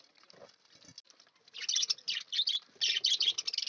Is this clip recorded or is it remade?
recorded